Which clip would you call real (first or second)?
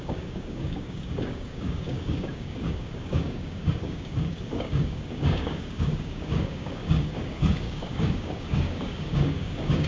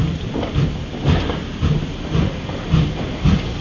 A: second